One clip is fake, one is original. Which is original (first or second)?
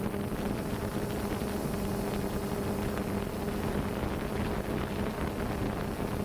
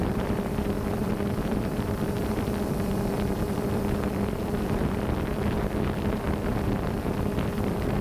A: first